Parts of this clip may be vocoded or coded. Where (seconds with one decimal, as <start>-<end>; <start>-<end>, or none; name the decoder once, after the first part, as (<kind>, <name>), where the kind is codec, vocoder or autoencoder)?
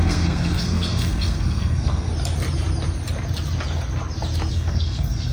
0.0-2.1 (codec, SNAC); 4.5-5.3